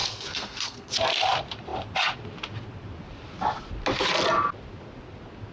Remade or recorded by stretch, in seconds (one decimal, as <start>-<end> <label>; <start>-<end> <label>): 0.0-0.9 remade; 0.9-5.5 recorded